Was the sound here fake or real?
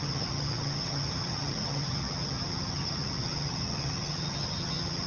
fake